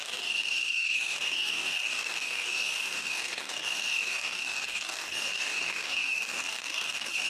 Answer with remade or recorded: remade